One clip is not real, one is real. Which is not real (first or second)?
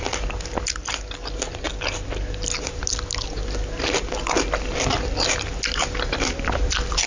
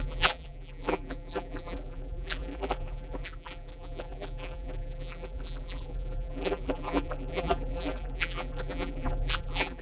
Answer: second